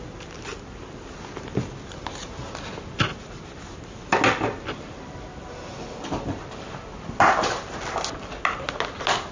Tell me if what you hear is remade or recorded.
recorded